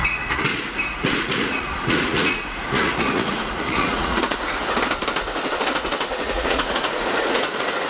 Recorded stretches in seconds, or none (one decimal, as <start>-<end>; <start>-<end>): 4.6-6.1